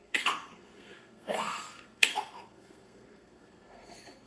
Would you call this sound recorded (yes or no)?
no